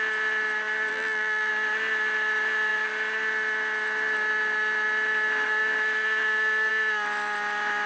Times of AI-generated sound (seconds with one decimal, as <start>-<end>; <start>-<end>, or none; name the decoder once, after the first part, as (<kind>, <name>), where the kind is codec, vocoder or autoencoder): 0.9-1.5 (vocoder, BigVGAN v2)